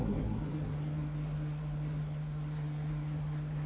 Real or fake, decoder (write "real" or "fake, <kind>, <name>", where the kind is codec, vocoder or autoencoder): fake, codec, SNAC